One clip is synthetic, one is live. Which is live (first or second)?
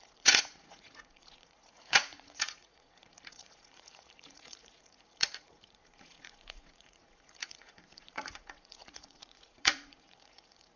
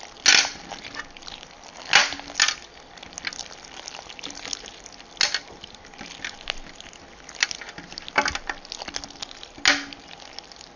second